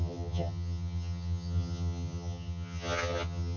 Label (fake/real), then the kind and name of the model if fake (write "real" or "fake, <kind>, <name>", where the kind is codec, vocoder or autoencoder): fake, vocoder, HiFi-GAN